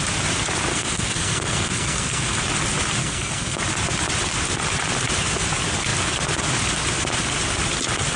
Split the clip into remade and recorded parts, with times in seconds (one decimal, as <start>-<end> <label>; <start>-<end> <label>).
0.0-0.7 recorded; 0.7-2.4 remade; 2.4-3.0 recorded; 3.0-3.6 remade; 3.6-8.2 recorded